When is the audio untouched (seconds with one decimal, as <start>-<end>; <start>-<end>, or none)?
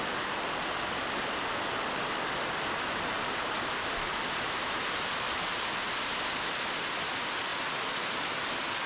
3.1-8.9